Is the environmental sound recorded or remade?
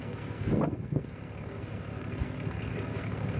remade